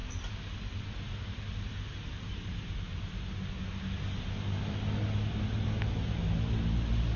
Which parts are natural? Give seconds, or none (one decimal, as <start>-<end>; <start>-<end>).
0.0-1.9; 2.5-7.2